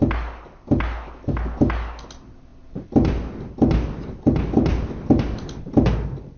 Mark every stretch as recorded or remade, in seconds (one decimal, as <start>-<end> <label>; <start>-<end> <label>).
0.0-6.4 recorded